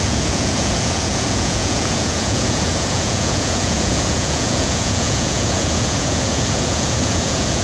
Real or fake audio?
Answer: fake